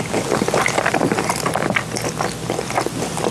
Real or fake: real